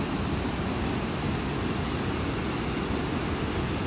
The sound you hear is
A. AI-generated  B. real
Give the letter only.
B